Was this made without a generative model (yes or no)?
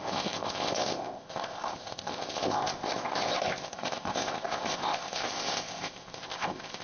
no